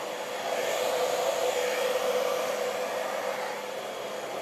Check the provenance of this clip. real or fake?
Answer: real